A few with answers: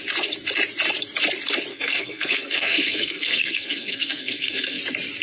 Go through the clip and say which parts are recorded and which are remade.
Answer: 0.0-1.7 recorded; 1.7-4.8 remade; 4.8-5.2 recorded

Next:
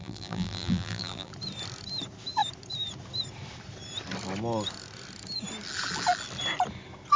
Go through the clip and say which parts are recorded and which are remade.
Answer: 0.0-1.3 remade; 1.3-7.2 recorded

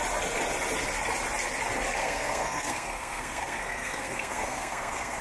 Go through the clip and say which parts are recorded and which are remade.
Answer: 0.0-2.0 recorded; 2.0-5.2 remade

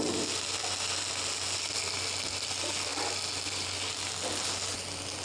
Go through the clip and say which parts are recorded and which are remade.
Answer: 0.0-5.2 recorded

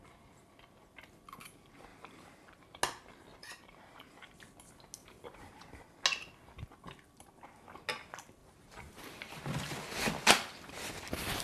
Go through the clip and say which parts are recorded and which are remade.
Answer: 0.0-1.9 recorded; 1.9-2.8 remade; 2.8-3.3 recorded; 3.3-4.3 remade; 4.3-5.0 recorded; 5.0-5.7 remade; 5.7-8.4 recorded; 8.4-10.8 remade; 10.8-11.4 recorded

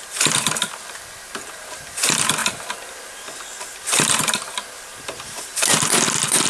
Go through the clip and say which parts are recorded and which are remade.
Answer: 0.0-6.5 recorded

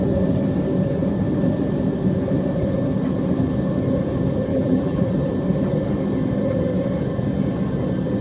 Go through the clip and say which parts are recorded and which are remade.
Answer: 0.0-4.5 recorded; 4.5-5.0 remade; 5.0-8.2 recorded